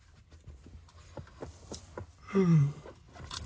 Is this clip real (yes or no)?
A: yes